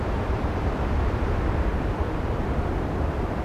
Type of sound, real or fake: fake